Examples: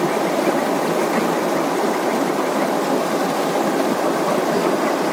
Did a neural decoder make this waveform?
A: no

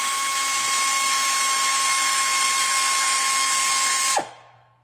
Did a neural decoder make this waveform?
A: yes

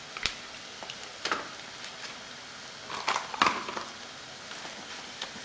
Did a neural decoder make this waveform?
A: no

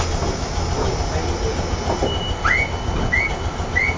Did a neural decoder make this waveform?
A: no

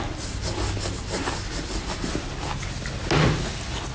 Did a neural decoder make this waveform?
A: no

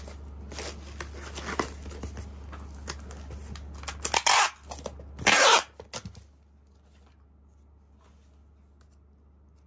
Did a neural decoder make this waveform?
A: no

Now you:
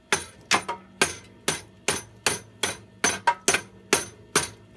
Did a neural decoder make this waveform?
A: no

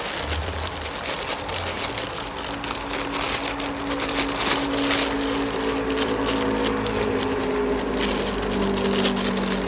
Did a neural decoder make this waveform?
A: no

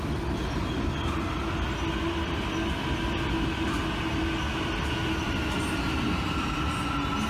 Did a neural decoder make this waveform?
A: no